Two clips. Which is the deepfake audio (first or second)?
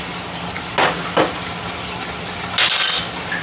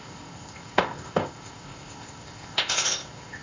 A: second